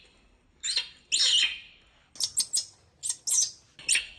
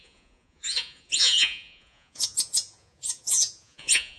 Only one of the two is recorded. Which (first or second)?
first